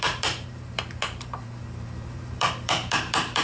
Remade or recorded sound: remade